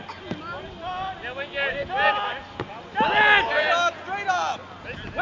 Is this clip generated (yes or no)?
no